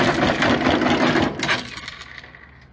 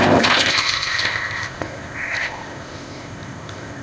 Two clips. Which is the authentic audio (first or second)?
first